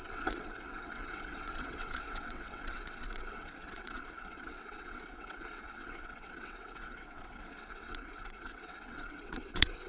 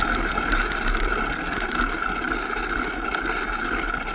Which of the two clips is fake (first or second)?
first